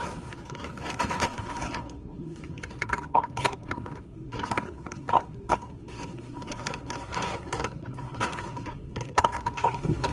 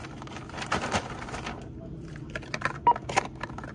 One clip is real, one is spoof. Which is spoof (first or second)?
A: first